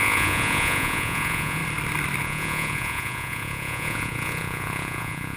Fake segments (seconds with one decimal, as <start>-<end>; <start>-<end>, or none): 0.0-1.6; 2.2-5.4